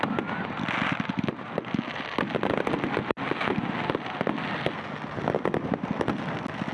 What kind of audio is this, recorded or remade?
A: recorded